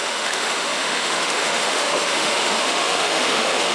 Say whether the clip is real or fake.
fake